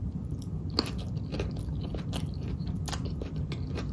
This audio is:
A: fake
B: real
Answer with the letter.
B